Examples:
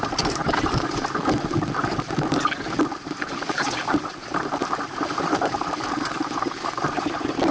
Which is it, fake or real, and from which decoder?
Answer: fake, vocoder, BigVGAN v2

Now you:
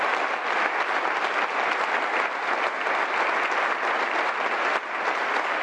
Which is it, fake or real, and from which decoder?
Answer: real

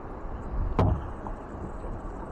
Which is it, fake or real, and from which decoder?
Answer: real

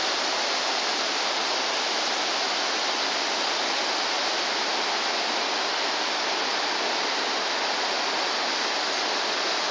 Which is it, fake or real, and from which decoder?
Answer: real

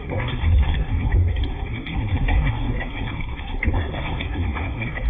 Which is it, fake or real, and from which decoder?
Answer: fake, codec, SNAC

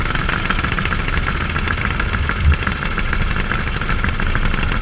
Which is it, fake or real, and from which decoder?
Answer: real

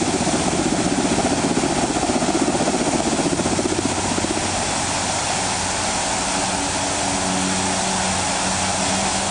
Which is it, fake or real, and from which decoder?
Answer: real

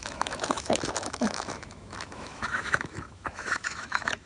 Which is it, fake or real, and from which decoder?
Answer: fake, autoencoder, DAC-VAE